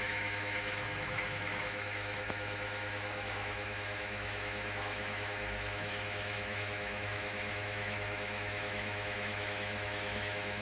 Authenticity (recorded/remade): remade